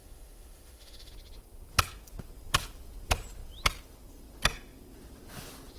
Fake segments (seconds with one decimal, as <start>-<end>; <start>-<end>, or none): 0.0-1.1